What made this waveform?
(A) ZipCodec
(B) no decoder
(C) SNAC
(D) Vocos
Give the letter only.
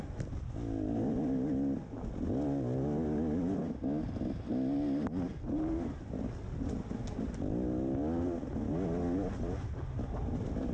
B